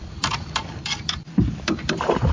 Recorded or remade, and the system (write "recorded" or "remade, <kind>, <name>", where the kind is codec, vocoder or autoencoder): remade, vocoder, BigVGAN v2